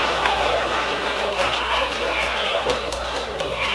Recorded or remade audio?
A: remade